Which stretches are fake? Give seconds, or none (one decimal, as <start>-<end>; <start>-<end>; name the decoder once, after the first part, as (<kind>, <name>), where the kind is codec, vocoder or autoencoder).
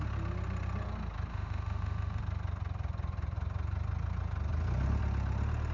1.3-2.2 (autoencoder, DAC-VAE)